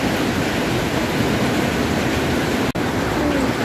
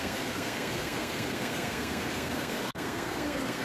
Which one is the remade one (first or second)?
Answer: second